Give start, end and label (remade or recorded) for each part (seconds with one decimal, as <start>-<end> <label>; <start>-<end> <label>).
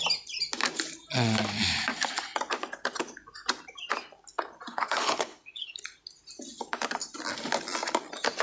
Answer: 0.0-4.7 recorded; 4.7-5.8 remade; 5.8-8.4 recorded